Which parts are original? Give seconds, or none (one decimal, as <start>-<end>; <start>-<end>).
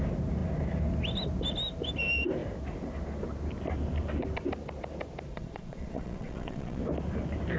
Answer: 0.0-5.3; 6.8-7.6